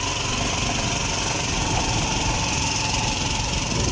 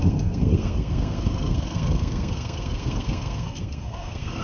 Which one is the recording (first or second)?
first